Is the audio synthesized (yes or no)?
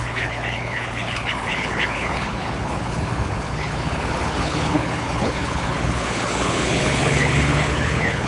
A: yes